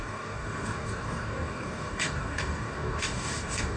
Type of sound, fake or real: fake